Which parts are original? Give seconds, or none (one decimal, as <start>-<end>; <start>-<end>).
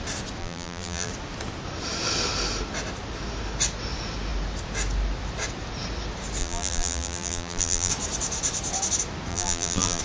0.0-0.4; 1.1-6.4; 7.9-9.3